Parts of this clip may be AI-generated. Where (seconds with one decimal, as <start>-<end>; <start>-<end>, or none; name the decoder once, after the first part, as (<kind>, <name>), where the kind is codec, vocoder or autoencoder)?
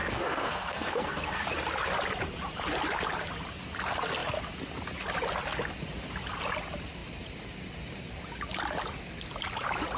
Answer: 0.0-1.4 (codec, SNAC)